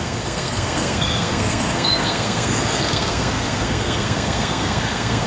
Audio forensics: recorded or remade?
remade